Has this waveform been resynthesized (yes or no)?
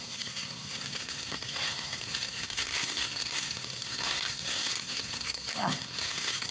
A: yes